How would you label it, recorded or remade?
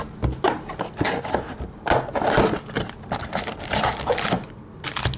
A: recorded